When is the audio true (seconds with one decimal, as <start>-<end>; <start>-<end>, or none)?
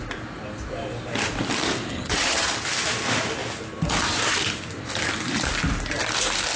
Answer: 0.0-1.9; 2.5-6.6